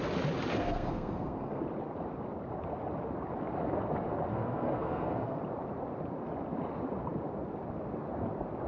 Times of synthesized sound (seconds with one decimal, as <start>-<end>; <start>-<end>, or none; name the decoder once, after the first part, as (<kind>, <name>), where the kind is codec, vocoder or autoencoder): 0.6-1.6 (codec, SNAC); 4.3-5.4